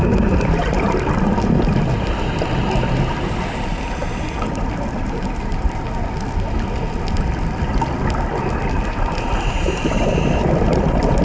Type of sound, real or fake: real